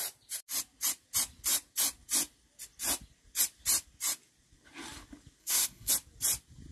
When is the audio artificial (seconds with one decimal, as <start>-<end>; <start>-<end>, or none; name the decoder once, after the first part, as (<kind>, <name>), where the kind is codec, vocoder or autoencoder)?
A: 5.4-5.9 (codec, SNAC)